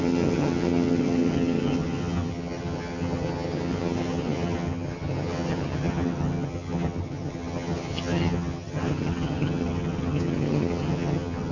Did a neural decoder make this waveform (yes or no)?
yes